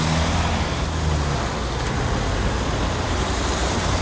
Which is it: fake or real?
real